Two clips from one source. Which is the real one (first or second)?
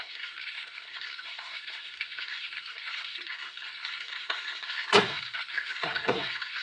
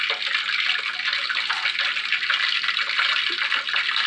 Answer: second